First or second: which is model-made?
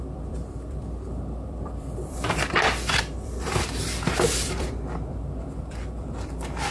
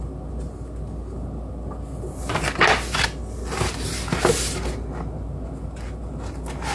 first